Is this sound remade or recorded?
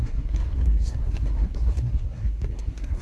remade